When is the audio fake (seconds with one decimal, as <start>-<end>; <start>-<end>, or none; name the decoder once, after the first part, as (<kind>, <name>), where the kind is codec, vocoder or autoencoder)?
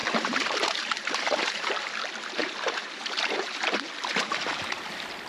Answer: 0.0-1.7 (vocoder, BigVGAN v2); 2.4-3.9